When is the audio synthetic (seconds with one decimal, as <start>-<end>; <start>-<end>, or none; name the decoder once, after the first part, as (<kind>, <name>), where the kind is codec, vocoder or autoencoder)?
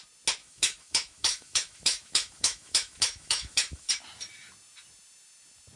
0.4-3.9 (autoencoder, DAC-VAE)